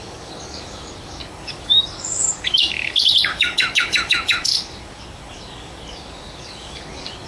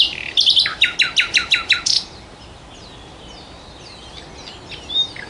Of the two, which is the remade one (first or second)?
first